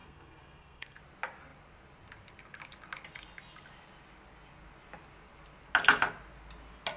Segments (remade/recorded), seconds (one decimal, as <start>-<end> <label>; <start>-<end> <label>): 0.0-1.0 remade; 1.0-7.0 recorded